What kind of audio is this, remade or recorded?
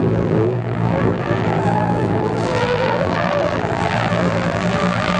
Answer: remade